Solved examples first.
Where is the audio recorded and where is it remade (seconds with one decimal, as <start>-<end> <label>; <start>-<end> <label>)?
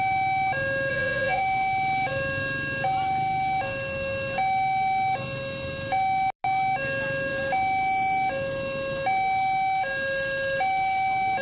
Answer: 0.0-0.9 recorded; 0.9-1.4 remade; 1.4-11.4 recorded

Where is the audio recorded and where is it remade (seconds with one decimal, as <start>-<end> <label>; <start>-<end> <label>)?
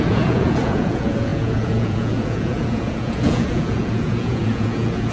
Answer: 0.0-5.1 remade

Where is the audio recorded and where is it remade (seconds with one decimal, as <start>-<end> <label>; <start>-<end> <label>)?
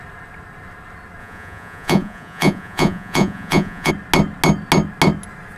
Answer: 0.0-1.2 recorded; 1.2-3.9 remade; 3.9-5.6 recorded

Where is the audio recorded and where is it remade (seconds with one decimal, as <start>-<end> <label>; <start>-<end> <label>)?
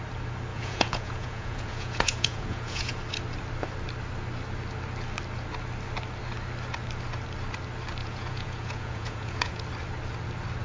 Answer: 0.0-0.5 recorded; 0.5-3.0 remade; 3.0-8.0 recorded; 8.0-9.6 remade; 9.6-10.6 recorded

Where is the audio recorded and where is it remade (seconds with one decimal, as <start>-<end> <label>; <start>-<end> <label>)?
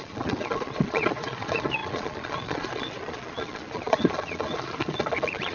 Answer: 0.0-5.5 remade